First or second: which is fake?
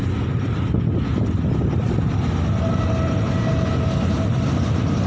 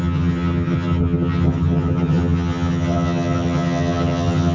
second